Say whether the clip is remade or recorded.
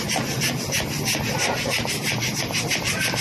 recorded